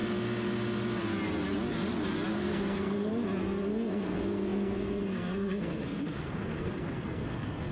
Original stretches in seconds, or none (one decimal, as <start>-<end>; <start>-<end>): 0.0-2.3; 3.1-3.7

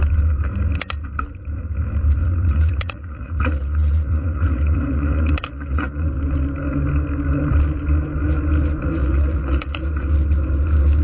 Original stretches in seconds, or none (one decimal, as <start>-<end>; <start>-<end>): 0.0-2.2; 6.2-9.0; 9.8-11.0

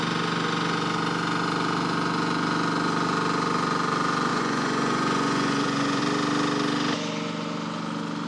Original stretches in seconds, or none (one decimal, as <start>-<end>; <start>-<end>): 0.0-4.3; 6.0-8.3

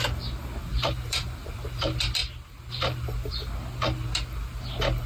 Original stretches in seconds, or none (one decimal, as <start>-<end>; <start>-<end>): 0.0-0.7; 1.8-5.1

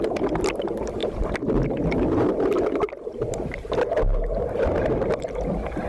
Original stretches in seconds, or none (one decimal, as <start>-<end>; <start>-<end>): 0.0-5.9